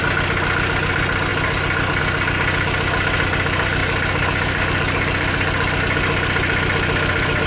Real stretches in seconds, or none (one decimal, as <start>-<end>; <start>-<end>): 0.0-7.5